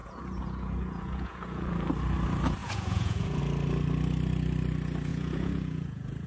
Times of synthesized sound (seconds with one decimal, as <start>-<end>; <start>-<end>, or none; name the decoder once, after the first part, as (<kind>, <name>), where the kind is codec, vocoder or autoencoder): 0.0-1.7 (vocoder, Vocos); 2.6-3.4; 5.1-6.3